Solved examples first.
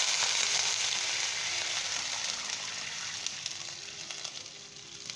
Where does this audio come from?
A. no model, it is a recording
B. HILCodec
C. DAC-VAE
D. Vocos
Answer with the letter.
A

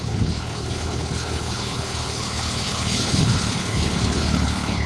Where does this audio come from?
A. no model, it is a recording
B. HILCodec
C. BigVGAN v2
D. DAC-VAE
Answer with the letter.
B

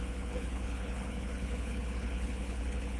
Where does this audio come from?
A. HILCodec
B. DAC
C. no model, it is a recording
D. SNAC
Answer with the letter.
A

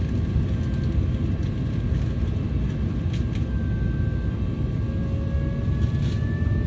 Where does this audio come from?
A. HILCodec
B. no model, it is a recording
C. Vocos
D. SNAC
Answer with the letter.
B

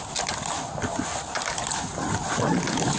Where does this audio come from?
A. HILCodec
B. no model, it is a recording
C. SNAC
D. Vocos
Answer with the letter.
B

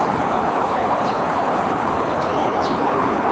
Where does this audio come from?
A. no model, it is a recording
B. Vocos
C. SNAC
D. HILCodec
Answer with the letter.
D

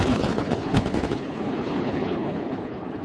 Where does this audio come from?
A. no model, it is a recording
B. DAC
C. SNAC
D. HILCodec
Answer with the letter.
D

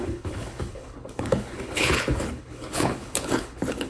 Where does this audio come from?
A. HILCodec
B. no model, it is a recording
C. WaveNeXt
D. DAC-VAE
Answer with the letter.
A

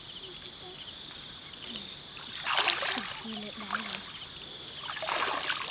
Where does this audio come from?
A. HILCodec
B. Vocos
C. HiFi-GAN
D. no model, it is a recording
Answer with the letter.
D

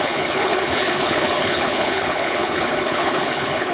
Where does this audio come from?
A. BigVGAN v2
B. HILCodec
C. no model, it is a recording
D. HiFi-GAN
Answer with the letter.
B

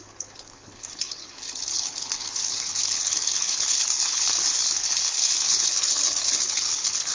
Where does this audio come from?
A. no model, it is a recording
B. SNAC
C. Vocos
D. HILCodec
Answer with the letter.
D